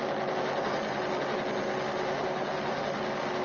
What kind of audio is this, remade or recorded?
recorded